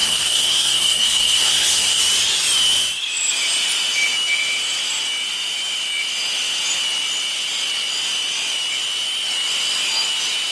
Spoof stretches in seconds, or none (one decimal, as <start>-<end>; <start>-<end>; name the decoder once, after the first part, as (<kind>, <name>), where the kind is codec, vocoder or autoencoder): 0.0-2.0 (codec, SNAC)